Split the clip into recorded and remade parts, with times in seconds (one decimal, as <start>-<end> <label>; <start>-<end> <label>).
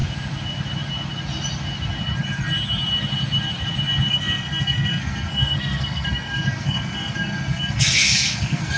0.0-4.1 recorded; 4.1-8.8 remade